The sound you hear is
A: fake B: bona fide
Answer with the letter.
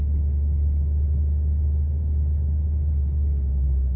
B